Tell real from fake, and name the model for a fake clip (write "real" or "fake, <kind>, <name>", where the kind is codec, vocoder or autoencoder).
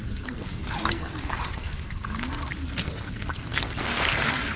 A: fake, codec, SNAC